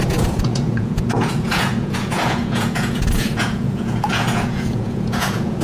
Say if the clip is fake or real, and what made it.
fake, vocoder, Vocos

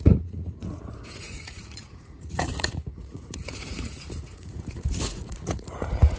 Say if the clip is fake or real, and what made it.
fake, vocoder, Vocos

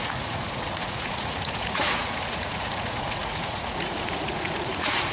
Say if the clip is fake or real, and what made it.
fake, vocoder, Vocos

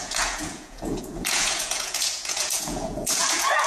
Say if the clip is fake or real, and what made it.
fake, vocoder, Vocos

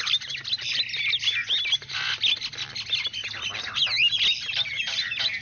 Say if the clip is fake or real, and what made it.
real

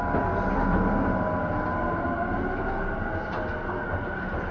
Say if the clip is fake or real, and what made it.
real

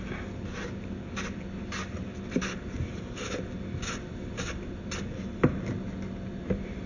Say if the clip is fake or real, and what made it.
real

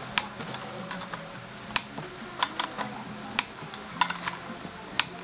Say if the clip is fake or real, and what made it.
real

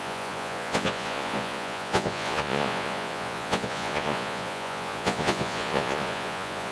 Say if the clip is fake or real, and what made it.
fake, vocoder, Vocos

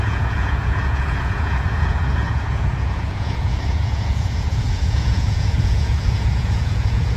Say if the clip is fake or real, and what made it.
fake, vocoder, Vocos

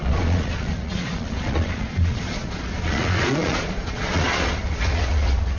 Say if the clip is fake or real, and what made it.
fake, vocoder, Vocos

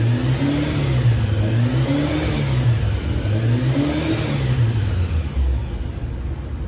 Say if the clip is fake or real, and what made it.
real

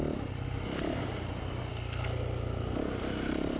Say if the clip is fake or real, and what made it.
real